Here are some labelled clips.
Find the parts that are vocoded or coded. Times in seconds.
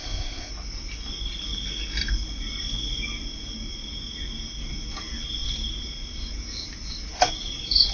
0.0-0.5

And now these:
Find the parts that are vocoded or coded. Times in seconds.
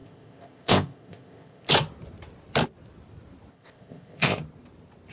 0.0-1.7; 3.5-4.4